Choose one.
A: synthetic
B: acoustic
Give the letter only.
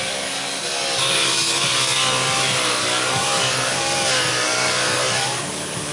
A